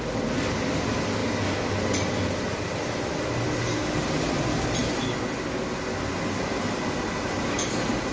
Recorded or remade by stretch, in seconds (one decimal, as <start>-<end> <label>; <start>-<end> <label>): 0.0-8.1 recorded